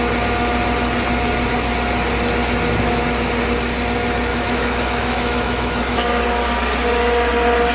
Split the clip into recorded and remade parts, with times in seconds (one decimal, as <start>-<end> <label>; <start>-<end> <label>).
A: 0.0-4.3 recorded; 4.3-6.2 remade; 6.2-7.7 recorded